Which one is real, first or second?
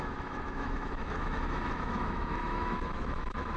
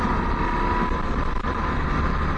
second